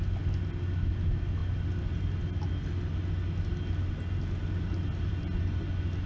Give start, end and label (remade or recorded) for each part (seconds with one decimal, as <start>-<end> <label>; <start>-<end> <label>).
0.0-6.1 recorded